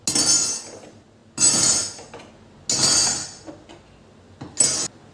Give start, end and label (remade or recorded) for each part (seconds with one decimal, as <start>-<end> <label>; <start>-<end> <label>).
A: 0.0-5.1 recorded